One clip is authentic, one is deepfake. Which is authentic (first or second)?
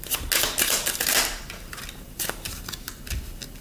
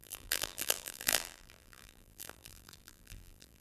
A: first